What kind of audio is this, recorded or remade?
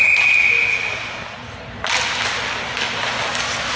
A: recorded